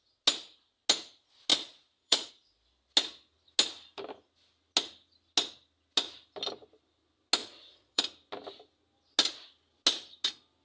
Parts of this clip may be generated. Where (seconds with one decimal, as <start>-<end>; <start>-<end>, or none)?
1.5-2.3; 7.4-8.0